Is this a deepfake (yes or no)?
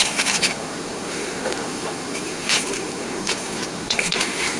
yes